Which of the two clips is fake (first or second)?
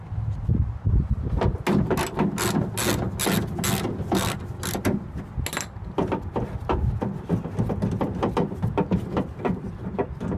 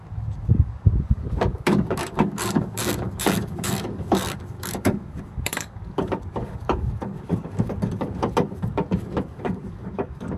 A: second